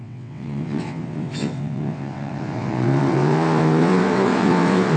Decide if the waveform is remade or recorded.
remade